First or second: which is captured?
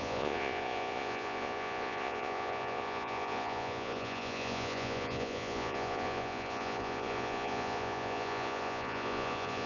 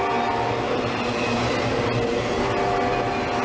second